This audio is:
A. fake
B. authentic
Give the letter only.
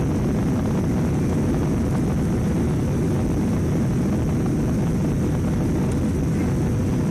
B